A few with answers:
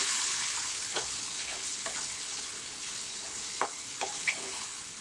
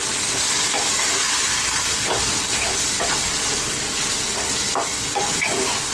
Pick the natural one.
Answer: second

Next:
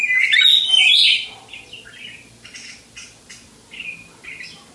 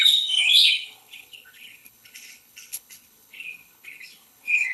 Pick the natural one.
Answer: first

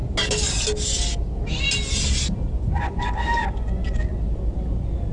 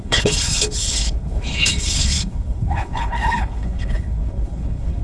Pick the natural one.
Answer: first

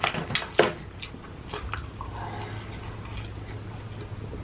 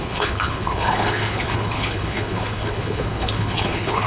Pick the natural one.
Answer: first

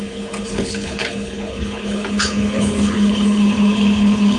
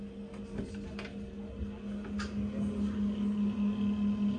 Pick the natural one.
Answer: second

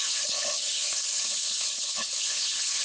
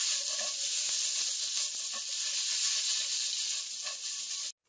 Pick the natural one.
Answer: second